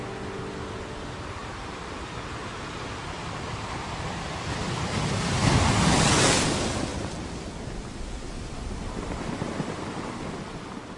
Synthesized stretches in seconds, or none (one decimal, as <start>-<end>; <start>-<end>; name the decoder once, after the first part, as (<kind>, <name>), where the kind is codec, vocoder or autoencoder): none